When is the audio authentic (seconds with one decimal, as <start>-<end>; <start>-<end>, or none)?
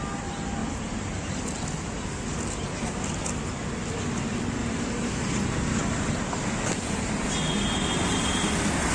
0.0-0.6; 1.5-4.6; 5.8-6.4; 7.1-8.9